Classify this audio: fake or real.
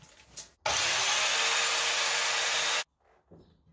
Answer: real